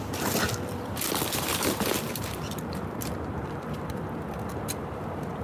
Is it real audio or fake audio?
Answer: fake